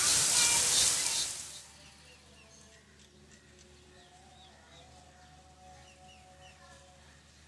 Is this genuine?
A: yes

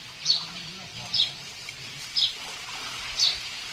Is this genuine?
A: yes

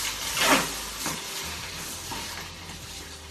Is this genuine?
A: yes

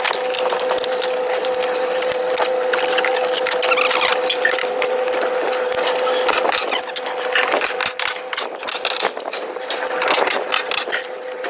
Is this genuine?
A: yes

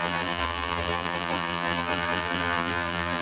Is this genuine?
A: no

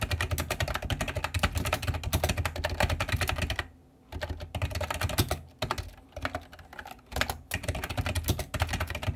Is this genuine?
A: yes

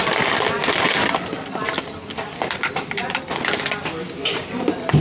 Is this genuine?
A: yes